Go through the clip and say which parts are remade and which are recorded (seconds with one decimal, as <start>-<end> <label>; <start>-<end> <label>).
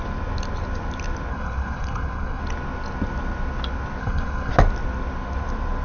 0.0-1.3 recorded; 1.3-2.4 remade; 2.4-4.0 recorded; 4.0-4.5 remade; 4.5-5.8 recorded